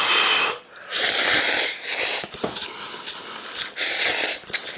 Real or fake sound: real